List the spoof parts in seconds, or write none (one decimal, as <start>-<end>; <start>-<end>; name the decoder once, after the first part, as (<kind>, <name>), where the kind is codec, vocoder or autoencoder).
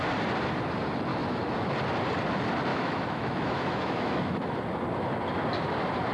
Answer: 1.1-1.7 (autoencoder, DAC-VAE); 2.7-4.5